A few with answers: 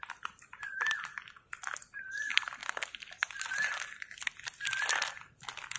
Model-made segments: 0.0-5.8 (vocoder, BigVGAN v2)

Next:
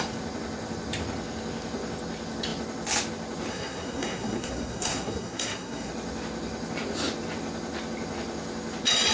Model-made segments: 3.5-5.9 (codec, SNAC)

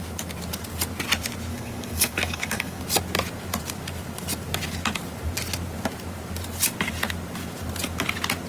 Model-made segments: 1.5-2.8 (codec, DAC)

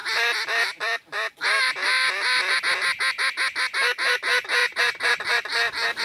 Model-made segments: 0.0-2.6 (vocoder, BigVGAN v2); 4.6-6.0